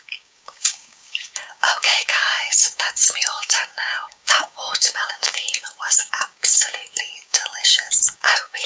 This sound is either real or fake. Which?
fake